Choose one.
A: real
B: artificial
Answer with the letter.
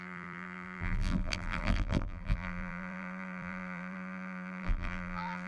B